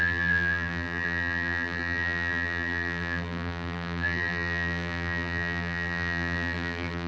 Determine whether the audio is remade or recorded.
remade